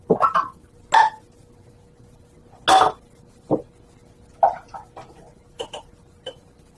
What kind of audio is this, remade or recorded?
recorded